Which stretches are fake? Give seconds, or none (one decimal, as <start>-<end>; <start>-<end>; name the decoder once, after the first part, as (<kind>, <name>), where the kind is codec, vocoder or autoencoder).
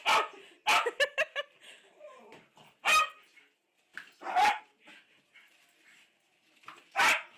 none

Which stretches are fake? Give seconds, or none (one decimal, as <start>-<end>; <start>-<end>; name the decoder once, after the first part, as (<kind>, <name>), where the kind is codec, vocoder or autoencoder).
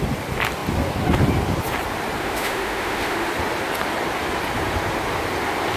2.2-3.3 (autoencoder, DAC-VAE)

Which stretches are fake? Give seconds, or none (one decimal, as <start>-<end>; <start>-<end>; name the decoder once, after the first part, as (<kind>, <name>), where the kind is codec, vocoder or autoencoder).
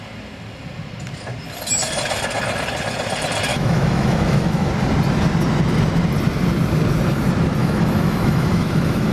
3.5-4.7 (autoencoder, DAC-VAE); 7.6-9.1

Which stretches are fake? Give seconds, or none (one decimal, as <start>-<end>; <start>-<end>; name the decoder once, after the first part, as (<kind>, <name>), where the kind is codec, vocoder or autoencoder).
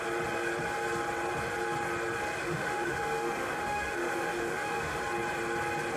2.4-5.0 (autoencoder, DAC-VAE)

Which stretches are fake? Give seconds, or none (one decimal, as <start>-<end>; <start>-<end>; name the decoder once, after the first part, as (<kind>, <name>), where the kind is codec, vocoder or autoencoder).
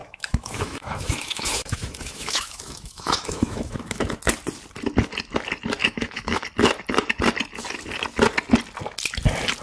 0.0-4.2 (autoencoder, DAC-VAE); 5.8-6.4